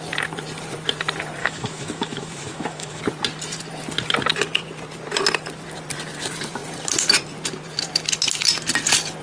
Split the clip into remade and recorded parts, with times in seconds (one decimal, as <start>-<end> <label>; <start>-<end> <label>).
0.0-1.4 recorded; 1.4-3.0 remade; 3.0-9.2 recorded